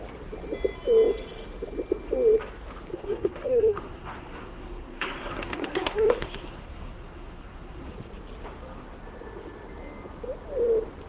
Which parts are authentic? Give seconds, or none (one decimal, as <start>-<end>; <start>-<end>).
0.0-2.9; 7.9-11.1